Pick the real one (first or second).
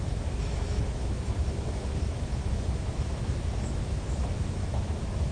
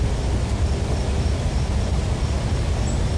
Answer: second